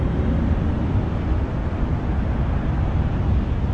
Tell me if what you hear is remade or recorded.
recorded